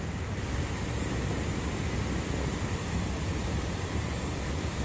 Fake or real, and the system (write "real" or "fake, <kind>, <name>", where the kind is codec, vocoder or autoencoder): real